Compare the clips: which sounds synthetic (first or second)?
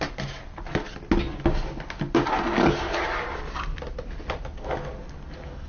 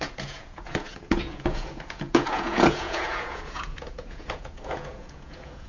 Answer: second